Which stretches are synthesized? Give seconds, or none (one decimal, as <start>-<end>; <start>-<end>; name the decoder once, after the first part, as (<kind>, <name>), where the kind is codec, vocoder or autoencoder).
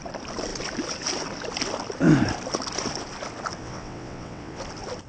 3.6-4.6 (vocoder, WaveNeXt)